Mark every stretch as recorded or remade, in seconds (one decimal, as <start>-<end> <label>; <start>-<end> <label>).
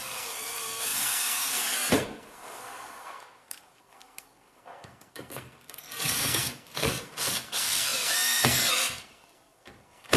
0.0-10.2 remade